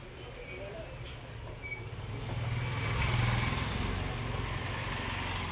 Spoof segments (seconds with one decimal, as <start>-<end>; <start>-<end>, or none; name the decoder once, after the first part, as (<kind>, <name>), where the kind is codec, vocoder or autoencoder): none